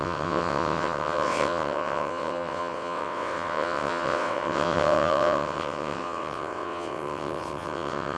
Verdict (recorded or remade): remade